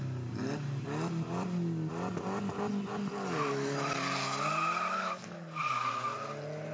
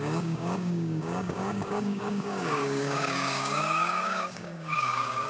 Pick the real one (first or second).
first